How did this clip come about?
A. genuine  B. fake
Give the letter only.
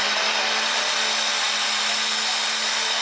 A